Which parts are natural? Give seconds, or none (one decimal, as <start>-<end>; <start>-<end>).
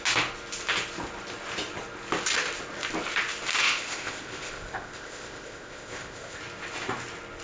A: 0.0-3.6; 6.4-7.4